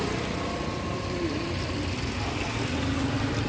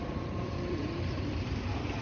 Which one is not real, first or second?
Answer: second